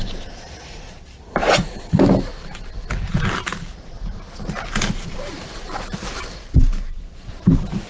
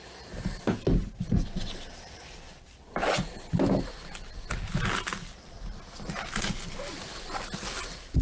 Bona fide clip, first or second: second